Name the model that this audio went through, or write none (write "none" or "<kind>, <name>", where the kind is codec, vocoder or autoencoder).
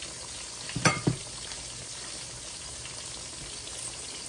none